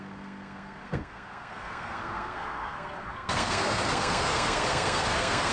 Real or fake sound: fake